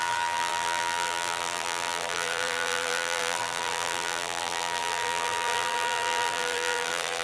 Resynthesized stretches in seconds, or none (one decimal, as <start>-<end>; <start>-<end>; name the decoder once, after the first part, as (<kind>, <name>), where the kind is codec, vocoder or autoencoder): 0.0-7.2 (vocoder, BigVGAN v2)